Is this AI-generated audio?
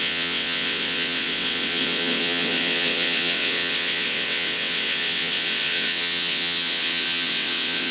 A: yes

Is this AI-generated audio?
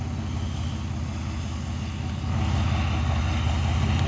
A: no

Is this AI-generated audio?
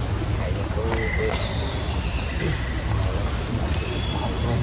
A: no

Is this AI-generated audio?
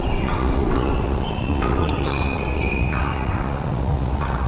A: yes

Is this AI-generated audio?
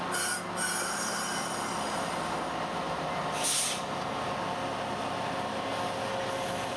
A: no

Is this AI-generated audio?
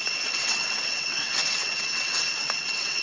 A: yes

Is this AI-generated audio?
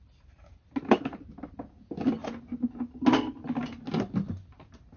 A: no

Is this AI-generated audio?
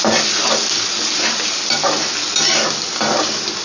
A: no